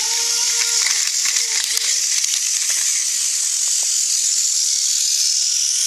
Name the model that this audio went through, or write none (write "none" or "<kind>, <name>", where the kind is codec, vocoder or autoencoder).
none